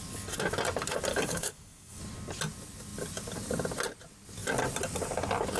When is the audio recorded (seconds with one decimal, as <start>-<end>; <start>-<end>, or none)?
0.0-1.1; 2.0-5.6